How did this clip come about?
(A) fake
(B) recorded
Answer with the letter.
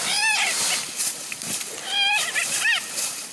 B